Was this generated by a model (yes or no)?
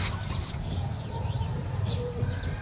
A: yes